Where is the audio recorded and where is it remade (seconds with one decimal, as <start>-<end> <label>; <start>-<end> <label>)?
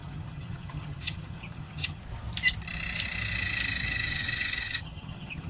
0.0-2.0 remade; 2.0-3.8 recorded; 3.8-5.5 remade